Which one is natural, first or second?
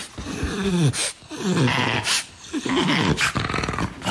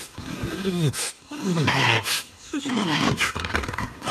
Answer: first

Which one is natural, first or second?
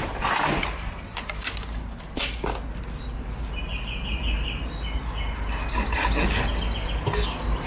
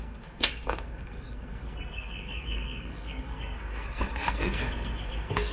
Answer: first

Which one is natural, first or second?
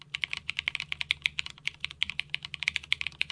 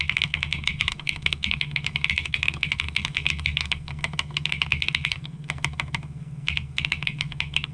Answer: first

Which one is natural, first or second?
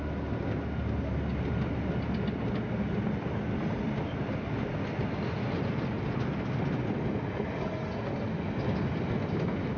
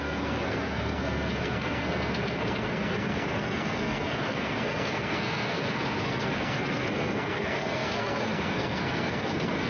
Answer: first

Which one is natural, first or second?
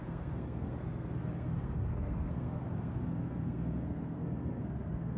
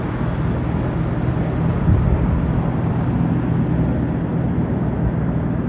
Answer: second